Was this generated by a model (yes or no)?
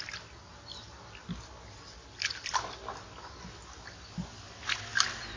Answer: no